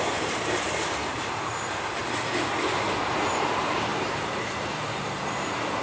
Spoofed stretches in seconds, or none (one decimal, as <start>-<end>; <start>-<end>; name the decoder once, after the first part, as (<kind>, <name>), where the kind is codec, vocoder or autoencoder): 0.0-2.0 (vocoder, BigVGAN v2); 3.3-5.8